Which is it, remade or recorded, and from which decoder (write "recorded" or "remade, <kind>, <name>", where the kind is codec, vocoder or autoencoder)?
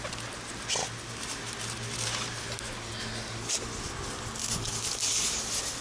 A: recorded